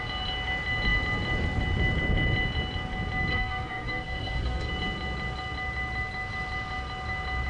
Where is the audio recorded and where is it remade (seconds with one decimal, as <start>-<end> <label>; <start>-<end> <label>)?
0.0-3.3 recorded; 3.3-4.7 remade; 4.7-7.5 recorded